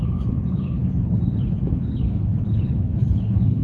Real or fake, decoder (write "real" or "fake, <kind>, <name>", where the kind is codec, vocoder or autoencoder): fake, codec, HILCodec